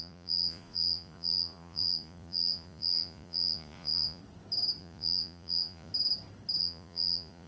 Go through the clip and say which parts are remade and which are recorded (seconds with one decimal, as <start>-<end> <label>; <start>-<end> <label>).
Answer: 0.0-4.2 remade; 4.2-4.8 recorded; 4.8-5.9 remade; 5.9-6.6 recorded; 6.6-7.5 remade